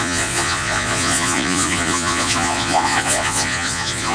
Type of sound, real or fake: fake